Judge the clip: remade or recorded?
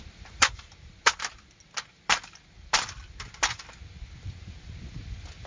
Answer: recorded